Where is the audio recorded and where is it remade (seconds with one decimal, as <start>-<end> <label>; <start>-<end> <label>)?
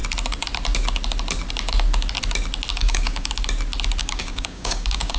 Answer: 0.0-2.7 recorded; 2.7-3.3 remade; 3.3-4.0 recorded; 4.0-5.2 remade